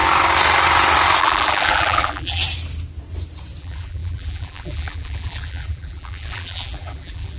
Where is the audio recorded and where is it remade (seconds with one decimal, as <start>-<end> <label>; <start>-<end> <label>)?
0.0-1.2 recorded; 1.2-2.4 remade; 2.4-3.6 recorded; 3.6-7.4 remade